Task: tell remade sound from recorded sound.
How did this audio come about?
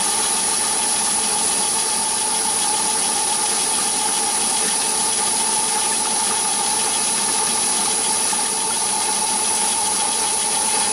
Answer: recorded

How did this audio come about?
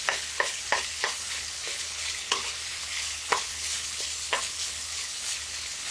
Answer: remade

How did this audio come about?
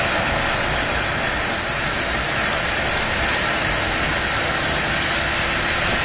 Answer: recorded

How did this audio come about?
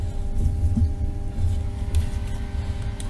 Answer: recorded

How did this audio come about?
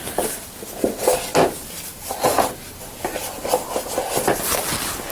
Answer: recorded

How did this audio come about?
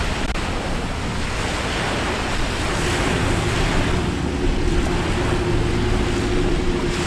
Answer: recorded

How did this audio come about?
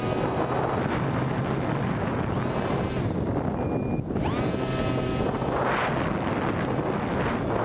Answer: recorded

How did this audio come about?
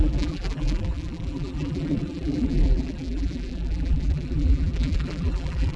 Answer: remade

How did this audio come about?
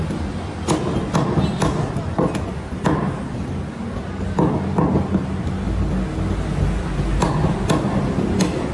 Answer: recorded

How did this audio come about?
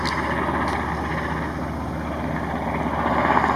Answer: recorded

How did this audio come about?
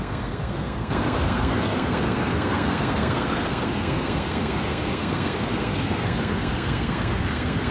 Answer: remade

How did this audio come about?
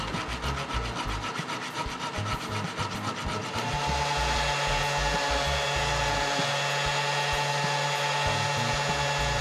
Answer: recorded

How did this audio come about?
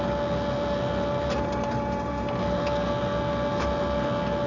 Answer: recorded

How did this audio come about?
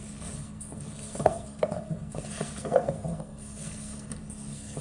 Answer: remade